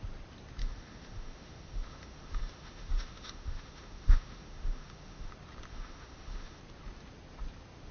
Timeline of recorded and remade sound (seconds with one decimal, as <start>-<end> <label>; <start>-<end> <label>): 0.0-0.6 recorded; 0.6-5.3 remade; 5.3-5.7 recorded; 5.7-6.6 remade; 6.6-7.9 recorded

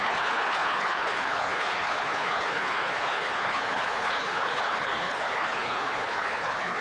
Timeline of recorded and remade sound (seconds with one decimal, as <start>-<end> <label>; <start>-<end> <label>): 0.0-6.8 remade

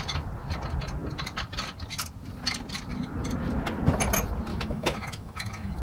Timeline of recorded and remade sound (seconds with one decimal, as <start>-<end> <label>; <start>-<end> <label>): 0.0-4.5 recorded; 4.5-5.8 remade

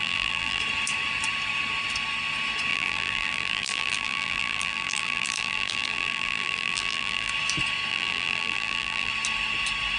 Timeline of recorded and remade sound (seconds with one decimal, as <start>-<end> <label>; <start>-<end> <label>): 0.0-0.6 remade; 0.6-2.7 recorded; 2.7-7.3 remade; 7.3-7.9 recorded; 7.9-9.1 remade; 9.1-10.0 recorded

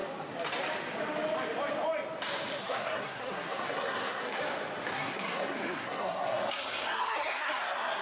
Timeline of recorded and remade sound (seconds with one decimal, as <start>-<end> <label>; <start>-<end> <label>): 0.0-2.6 recorded; 2.6-4.4 remade; 4.4-4.9 recorded; 4.9-8.0 remade

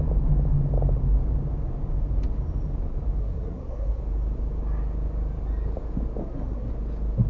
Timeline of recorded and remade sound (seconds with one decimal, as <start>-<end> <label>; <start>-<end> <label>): 0.0-3.2 recorded; 3.2-4.0 remade; 4.0-6.2 recorded; 6.2-6.7 remade; 6.7-7.3 recorded